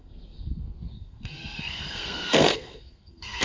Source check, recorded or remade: remade